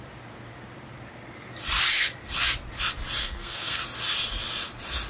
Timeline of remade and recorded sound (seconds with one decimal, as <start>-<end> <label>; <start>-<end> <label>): 0.0-3.2 recorded; 3.2-3.8 remade; 3.8-5.1 recorded